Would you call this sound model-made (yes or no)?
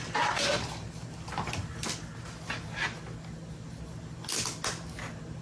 no